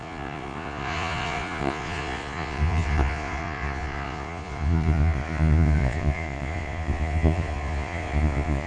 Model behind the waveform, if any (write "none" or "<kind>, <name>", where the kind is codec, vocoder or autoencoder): vocoder, Vocos